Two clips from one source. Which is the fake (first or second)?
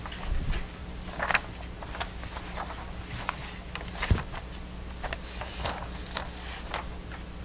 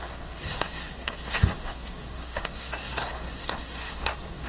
second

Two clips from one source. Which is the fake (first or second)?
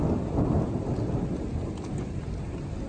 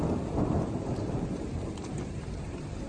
second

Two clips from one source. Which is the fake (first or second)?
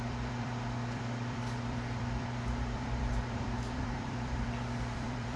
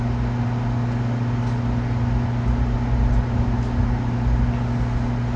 first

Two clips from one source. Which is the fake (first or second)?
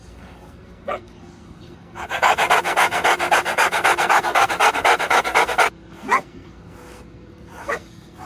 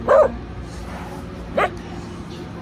first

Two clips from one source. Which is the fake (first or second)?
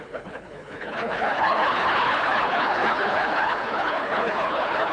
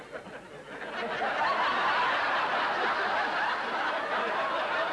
first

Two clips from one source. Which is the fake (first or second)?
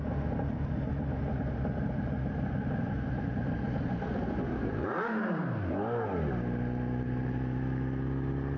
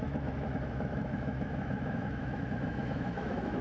second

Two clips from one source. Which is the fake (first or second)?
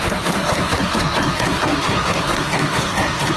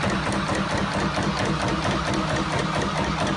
first